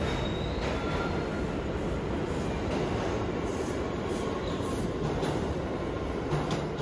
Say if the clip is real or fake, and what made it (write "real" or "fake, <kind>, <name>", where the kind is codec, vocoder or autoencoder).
real